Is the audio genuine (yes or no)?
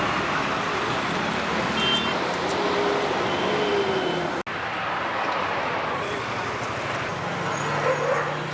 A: yes